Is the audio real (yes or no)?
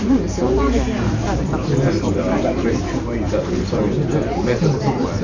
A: no